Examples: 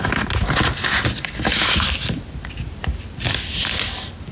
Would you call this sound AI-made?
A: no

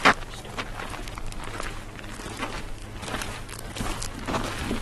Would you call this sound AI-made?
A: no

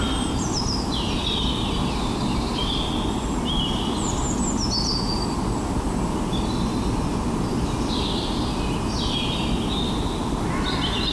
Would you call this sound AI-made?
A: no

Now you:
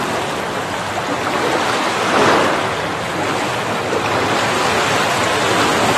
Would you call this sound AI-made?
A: yes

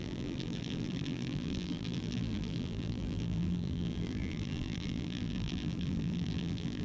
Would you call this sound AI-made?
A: yes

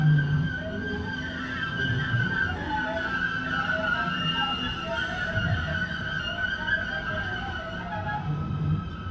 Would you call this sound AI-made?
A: no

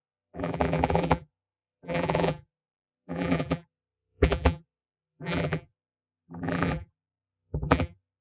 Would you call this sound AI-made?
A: yes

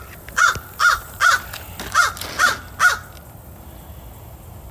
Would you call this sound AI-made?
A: no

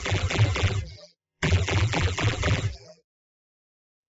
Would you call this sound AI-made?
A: yes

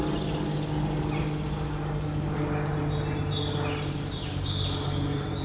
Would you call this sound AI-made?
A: no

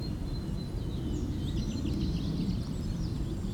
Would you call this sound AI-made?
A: no